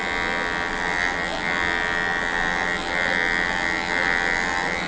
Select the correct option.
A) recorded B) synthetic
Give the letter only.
A